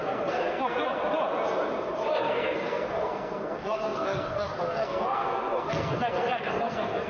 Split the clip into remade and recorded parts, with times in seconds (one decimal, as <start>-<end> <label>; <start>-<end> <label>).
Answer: 0.0-1.0 remade; 1.0-2.2 recorded; 2.2-7.1 remade